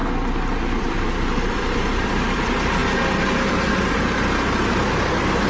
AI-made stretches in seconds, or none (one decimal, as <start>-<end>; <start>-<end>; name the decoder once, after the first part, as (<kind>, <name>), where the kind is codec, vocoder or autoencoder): 0.8-2.8 (vocoder, BigVGAN v2); 3.5-5.5